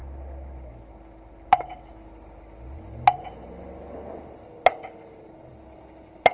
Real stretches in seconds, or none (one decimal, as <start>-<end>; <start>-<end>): 0.0-6.3